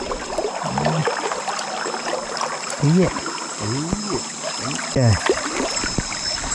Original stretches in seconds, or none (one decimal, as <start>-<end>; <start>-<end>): 1.0-4.9